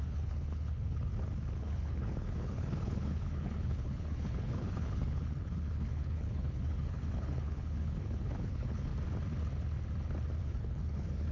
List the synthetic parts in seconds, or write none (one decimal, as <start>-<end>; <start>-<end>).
0.0-1.1; 1.6-8.9; 10.4-11.3